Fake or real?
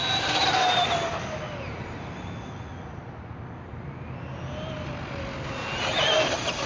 real